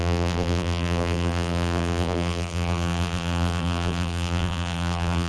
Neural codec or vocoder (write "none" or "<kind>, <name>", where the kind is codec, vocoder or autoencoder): vocoder, BigVGAN v2